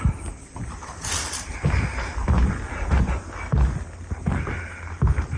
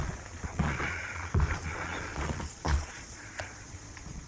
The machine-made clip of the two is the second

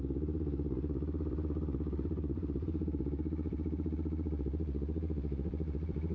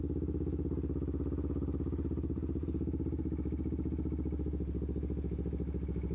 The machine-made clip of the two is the first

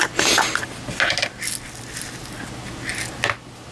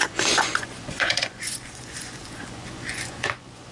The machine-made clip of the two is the second